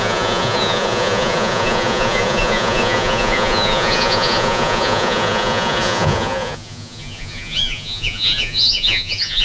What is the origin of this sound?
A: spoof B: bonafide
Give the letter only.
A